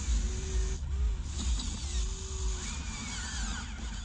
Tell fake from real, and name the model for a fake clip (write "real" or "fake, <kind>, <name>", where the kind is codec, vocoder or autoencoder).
real